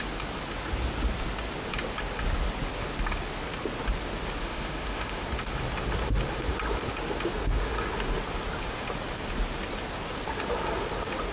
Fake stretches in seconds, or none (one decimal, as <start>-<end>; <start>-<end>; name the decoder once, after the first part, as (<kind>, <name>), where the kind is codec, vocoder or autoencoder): 4.4-5.2 (autoencoder, DAC-VAE)